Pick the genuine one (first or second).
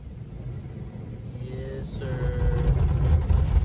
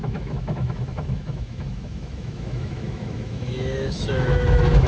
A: first